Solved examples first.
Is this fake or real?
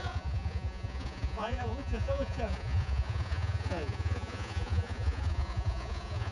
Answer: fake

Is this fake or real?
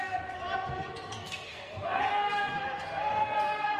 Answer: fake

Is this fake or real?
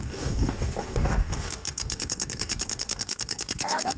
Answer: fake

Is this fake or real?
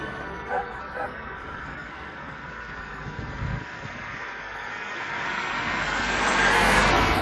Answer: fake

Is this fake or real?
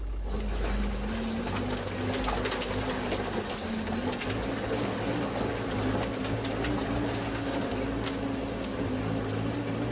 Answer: real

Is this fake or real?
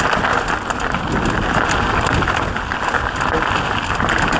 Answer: real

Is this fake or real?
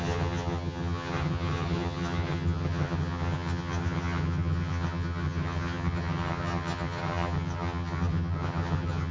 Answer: fake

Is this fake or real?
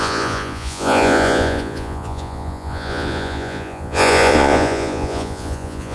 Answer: fake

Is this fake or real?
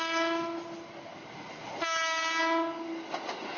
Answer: real